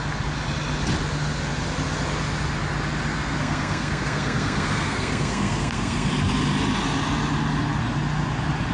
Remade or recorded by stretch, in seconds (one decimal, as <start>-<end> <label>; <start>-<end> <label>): 0.0-3.1 recorded; 3.1-6.1 remade; 6.1-8.7 recorded